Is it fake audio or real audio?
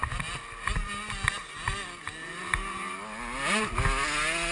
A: real